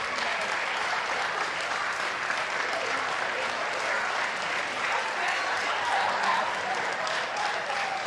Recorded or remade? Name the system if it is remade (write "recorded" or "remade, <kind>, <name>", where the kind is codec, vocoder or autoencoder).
remade, vocoder, BigVGAN v2